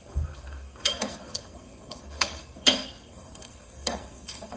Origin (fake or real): fake